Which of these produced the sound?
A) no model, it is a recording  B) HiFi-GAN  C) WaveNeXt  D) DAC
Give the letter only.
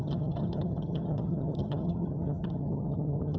B